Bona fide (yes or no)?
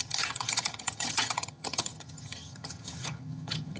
no